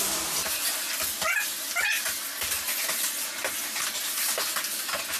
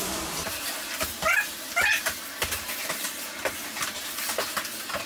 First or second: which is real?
first